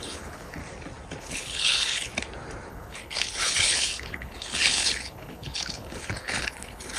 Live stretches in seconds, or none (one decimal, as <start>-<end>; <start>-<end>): 0.6-1.2; 2.1-2.7